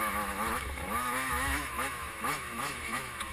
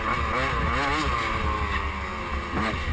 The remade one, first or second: first